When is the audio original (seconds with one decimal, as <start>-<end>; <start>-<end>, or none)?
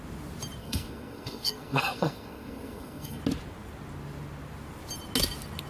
0.0-0.6; 3.2-5.7